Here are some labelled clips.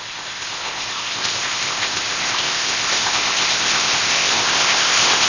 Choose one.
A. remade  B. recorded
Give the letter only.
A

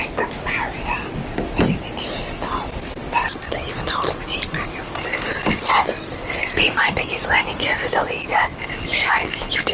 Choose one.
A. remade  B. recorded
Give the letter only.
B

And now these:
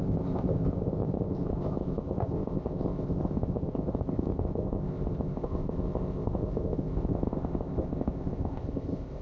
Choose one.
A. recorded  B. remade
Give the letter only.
B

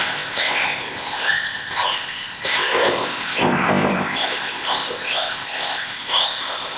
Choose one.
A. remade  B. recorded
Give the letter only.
A